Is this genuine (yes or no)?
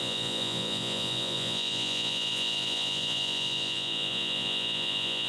no